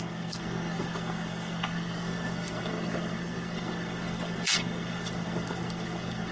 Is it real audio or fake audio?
fake